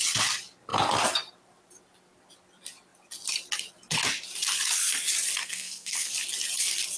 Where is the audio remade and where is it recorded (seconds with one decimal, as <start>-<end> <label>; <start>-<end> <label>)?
0.0-5.4 recorded; 5.4-6.1 remade; 6.1-7.0 recorded